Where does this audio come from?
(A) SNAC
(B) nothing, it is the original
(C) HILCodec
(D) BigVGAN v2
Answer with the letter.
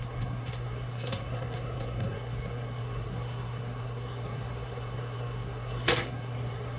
A